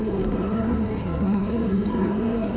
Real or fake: fake